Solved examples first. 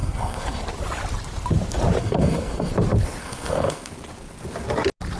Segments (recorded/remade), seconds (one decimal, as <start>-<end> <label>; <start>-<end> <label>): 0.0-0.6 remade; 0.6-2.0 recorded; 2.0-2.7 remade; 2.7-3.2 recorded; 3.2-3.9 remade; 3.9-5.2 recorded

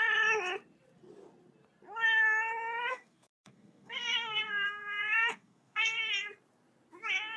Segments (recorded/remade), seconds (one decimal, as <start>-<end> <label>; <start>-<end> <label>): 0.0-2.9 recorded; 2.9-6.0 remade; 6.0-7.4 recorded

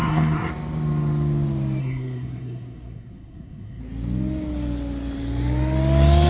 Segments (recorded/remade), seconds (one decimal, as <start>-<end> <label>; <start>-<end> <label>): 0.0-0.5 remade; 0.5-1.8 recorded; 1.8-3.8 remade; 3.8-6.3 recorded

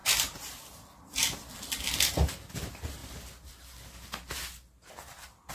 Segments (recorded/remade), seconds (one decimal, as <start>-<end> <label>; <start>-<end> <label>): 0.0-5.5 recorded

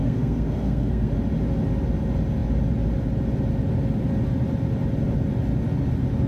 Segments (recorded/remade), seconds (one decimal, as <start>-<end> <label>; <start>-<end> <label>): 0.0-1.1 remade; 1.1-6.3 recorded

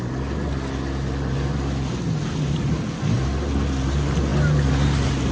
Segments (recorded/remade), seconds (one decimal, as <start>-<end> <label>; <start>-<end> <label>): 0.0-5.3 recorded